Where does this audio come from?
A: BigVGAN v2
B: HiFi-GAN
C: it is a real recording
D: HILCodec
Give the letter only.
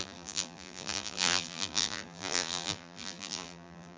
A